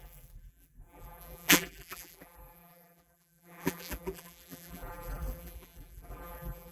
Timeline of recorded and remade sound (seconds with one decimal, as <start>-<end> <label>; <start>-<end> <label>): 0.0-6.7 remade